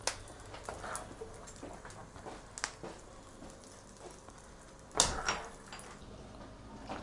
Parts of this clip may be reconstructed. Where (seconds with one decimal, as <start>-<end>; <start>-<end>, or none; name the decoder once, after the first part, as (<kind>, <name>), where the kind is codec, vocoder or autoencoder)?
none